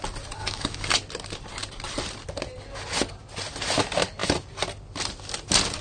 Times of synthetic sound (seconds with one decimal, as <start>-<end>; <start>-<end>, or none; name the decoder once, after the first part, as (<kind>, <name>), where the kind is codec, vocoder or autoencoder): 0.4-0.9 (codec, DAC)